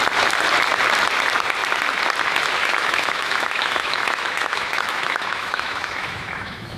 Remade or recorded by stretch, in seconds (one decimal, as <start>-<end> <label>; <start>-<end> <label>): 0.0-2.6 recorded; 2.6-6.8 remade